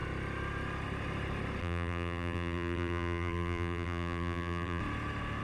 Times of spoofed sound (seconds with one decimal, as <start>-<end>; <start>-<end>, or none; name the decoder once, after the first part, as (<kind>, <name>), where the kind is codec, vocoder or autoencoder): 1.6-4.8 (vocoder, BigVGAN v2)